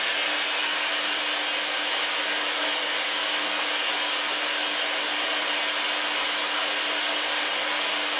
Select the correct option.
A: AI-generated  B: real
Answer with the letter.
B